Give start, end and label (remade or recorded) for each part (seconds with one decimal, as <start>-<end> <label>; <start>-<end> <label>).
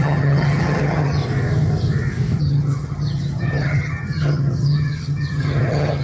0.0-1.2 remade; 1.2-2.4 recorded; 2.4-6.0 remade